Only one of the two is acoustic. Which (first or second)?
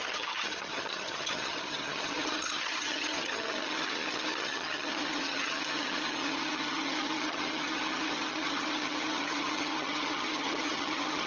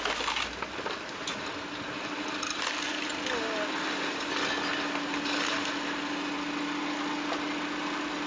second